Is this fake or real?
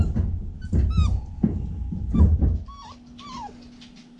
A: real